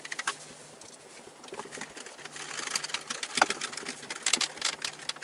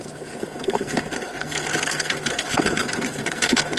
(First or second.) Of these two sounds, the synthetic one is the second